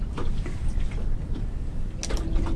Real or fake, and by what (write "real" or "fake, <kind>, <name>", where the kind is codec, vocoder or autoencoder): real